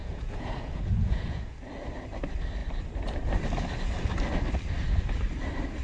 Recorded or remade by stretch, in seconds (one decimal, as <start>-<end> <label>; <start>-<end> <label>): 0.0-1.5 remade; 1.5-5.8 recorded